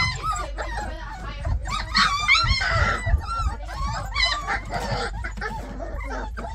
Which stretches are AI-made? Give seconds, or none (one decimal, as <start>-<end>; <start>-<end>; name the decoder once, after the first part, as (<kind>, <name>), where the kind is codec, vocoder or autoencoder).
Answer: 0.0-6.5 (vocoder, BigVGAN v2)